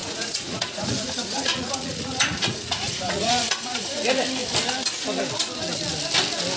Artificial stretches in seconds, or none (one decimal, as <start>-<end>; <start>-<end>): 0.0-4.0